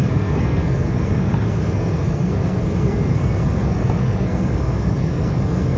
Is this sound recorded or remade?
remade